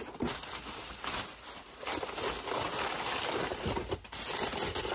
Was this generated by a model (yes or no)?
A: no